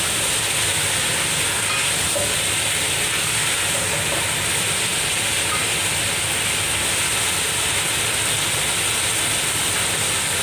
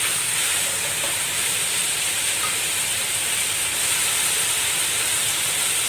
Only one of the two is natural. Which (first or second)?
first